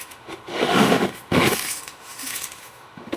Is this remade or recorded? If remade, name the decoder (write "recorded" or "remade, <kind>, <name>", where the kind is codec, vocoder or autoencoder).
remade, autoencoder, DAC-VAE